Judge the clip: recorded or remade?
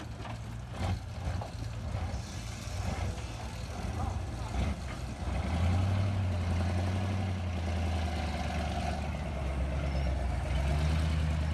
recorded